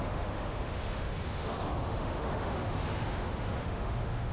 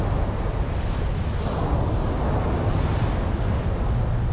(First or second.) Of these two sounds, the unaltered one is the second